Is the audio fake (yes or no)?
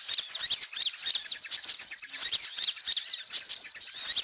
yes